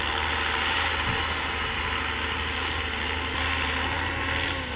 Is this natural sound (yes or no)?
yes